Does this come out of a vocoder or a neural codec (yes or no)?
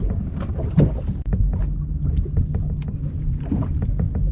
no